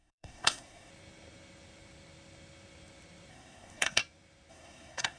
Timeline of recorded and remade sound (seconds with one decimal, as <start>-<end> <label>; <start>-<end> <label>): 0.0-0.9 remade; 0.9-3.3 recorded; 3.3-4.0 remade; 4.0-4.5 recorded; 4.5-5.2 remade